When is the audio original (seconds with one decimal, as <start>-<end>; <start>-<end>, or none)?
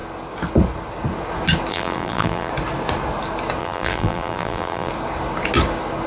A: 0.0-1.7; 2.5-3.6; 4.9-6.1